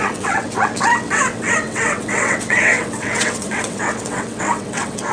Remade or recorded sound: remade